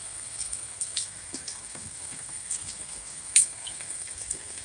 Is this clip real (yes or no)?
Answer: no